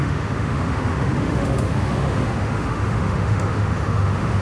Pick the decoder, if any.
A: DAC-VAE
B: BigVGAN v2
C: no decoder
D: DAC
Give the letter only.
A